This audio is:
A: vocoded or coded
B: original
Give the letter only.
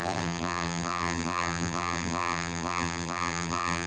A